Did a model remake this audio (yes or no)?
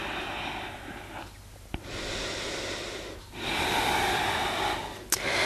no